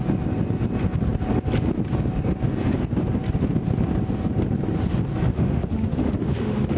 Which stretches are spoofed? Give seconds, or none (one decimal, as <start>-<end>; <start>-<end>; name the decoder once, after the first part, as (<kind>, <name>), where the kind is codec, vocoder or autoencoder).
5.3-6.8 (autoencoder, DAC-VAE)